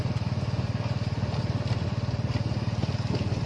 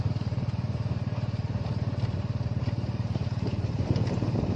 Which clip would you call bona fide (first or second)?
first